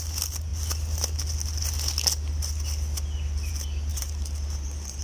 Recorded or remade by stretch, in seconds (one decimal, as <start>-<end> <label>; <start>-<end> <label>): 0.0-3.9 recorded; 3.9-5.0 remade